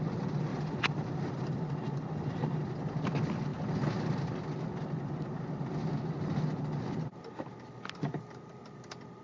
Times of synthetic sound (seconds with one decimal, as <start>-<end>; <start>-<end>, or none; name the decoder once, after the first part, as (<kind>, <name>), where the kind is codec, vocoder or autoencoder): 0.5-2.7 (vocoder, BigVGAN v2)